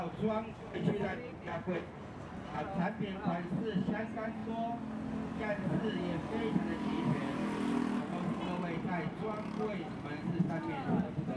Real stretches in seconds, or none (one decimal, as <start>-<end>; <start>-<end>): 0.0-1.1; 1.8-11.4